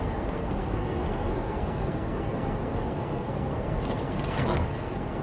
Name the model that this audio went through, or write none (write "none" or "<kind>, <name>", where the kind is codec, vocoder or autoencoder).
codec, SNAC